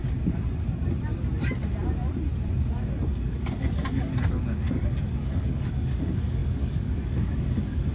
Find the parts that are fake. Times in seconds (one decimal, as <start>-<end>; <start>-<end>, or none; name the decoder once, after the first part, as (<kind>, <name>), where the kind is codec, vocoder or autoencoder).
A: 3.1-4.1 (codec, DAC); 4.7-7.9